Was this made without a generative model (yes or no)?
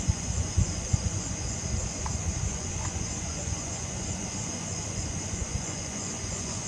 no